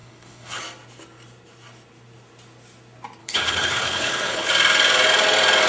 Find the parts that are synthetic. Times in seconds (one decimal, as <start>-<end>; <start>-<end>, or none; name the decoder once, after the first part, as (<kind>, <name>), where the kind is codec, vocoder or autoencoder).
0.0-0.6 (codec, HILCodec); 3.2-4.5